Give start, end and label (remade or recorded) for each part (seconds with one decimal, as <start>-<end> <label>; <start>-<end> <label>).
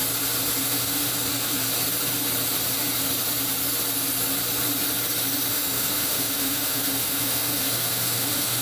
0.0-0.6 recorded; 0.6-1.1 remade; 1.1-5.5 recorded; 5.5-8.6 remade